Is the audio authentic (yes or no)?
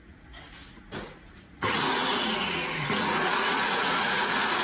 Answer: no